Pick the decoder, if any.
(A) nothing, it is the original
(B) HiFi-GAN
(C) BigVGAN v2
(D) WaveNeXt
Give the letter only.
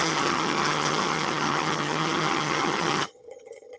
B